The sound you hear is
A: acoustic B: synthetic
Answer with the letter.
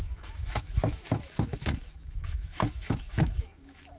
B